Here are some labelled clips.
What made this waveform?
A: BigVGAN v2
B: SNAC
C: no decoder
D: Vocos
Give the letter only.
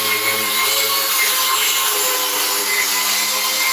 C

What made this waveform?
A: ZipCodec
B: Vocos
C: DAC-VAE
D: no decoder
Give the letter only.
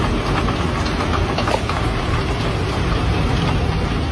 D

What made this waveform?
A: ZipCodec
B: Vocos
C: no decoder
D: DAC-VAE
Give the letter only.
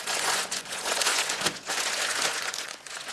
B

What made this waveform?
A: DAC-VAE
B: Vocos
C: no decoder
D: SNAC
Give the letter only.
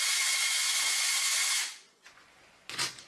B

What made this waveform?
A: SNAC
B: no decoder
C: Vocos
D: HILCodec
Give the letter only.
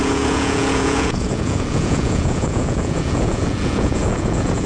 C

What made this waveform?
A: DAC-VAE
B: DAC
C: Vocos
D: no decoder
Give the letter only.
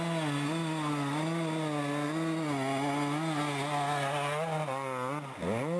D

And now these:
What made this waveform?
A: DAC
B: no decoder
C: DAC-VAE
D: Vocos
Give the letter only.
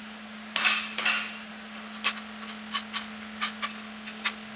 B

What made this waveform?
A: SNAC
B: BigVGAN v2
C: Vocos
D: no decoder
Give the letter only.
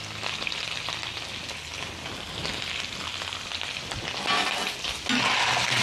D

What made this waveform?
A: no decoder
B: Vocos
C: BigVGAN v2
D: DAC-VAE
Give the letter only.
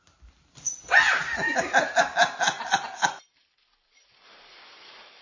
A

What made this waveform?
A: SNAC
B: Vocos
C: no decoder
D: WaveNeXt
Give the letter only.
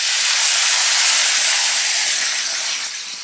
C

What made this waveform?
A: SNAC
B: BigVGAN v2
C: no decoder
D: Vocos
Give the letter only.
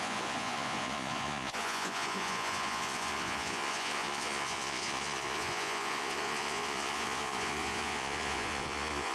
D